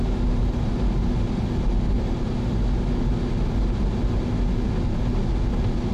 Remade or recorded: recorded